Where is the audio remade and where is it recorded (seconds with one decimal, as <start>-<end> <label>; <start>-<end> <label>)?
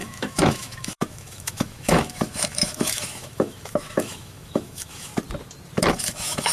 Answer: 0.0-5.1 remade; 5.1-5.9 recorded; 5.9-6.5 remade